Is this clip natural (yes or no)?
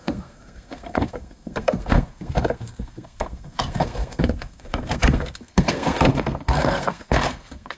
no